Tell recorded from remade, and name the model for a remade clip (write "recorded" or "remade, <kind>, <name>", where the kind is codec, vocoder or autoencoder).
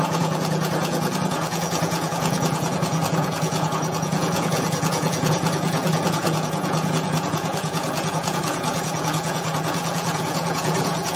remade, vocoder, Vocos